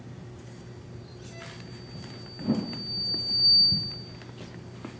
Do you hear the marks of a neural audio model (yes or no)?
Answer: no